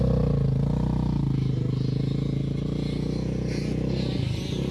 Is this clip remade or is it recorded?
recorded